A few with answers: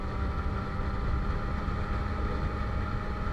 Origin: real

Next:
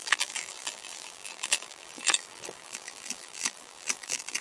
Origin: fake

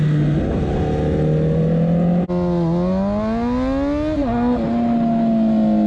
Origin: real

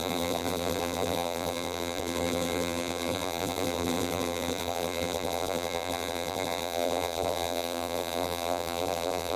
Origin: fake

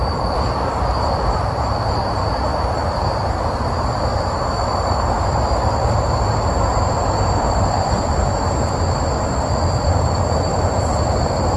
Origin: fake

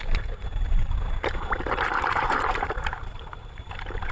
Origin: fake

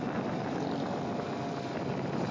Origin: real